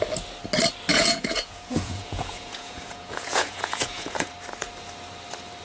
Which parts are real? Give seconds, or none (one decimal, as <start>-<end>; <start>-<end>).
0.0-0.9; 4.3-5.6

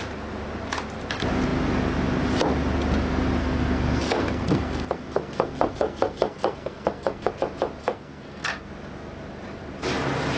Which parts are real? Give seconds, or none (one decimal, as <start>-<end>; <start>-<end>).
0.0-3.4; 7.3-7.8; 8.7-10.4

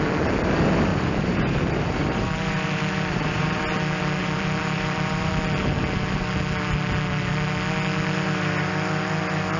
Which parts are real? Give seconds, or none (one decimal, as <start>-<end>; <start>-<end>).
0.0-0.9; 3.6-4.2; 5.3-9.6

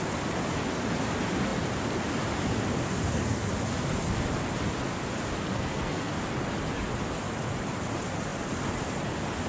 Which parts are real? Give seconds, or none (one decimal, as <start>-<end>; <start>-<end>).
0.0-5.5; 6.1-9.5

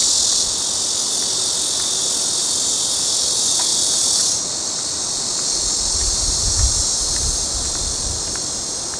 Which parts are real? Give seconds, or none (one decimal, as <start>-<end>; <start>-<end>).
0.0-3.7; 4.2-6.0; 7.5-9.0

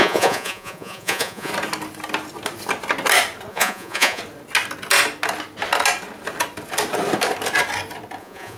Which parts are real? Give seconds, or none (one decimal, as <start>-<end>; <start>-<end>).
1.5-3.5; 4.2-8.2

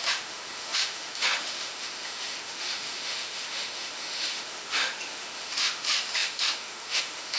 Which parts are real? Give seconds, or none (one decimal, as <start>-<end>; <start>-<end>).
none